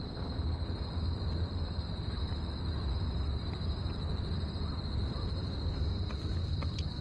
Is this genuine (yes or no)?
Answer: no